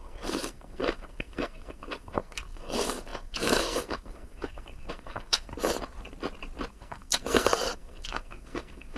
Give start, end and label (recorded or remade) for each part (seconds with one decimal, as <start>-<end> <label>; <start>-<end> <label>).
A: 0.0-5.5 remade; 5.5-6.7 recorded; 6.7-9.0 remade